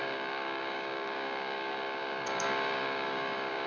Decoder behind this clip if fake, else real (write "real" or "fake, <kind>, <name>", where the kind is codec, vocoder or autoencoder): fake, codec, DAC